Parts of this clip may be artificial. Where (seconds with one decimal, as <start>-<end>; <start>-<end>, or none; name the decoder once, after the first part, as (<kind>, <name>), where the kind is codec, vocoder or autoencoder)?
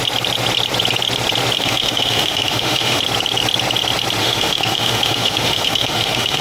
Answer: 1.6-3.0 (autoencoder, DAC-VAE); 4.2-6.4